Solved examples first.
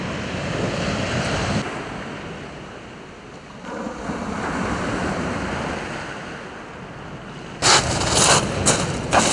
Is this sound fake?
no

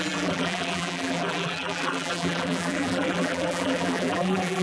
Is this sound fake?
yes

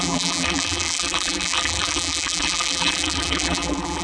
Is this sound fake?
yes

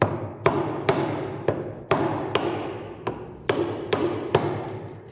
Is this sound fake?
yes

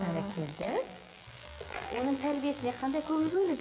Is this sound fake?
yes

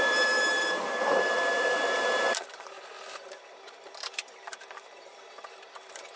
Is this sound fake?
yes